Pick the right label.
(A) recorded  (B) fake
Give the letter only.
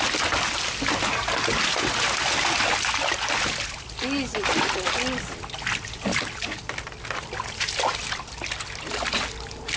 A